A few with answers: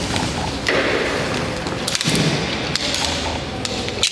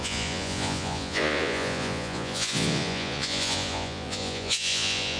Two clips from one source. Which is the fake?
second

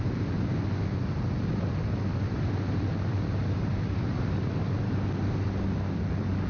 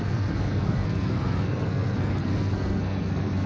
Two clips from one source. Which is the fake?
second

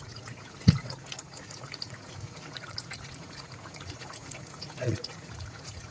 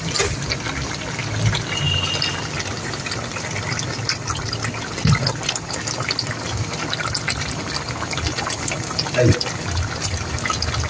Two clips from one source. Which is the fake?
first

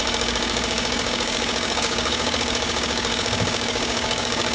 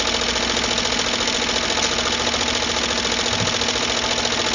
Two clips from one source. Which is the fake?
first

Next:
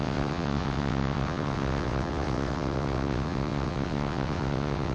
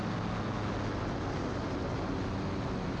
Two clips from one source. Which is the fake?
first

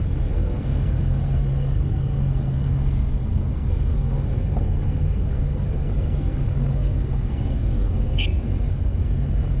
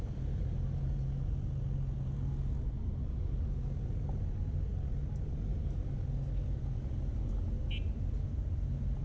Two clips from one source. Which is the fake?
first